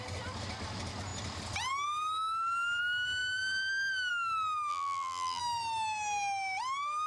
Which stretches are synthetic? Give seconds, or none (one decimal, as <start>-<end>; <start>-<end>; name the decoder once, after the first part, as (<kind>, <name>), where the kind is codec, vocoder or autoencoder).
4.7-5.4 (vocoder, BigVGAN v2)